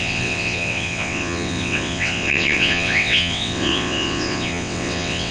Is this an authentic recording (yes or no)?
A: no